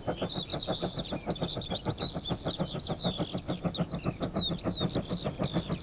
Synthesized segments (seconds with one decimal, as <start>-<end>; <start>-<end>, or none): none